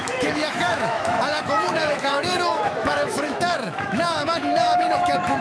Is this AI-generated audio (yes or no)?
yes